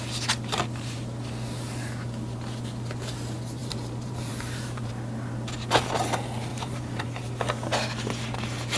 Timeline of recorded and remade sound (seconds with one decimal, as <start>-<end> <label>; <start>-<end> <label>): 0.0-3.6 recorded; 3.6-4.9 remade; 4.9-6.5 recorded; 6.5-7.2 remade; 7.2-8.8 recorded